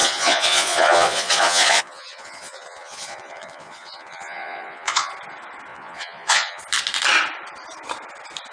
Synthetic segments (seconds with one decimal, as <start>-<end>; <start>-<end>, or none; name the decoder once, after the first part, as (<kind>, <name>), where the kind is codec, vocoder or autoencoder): 0.0-5.1 (vocoder, Vocos); 5.7-6.6